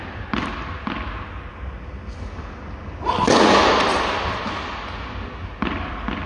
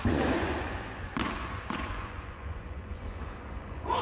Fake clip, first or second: second